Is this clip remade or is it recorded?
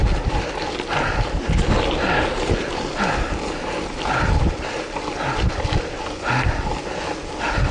recorded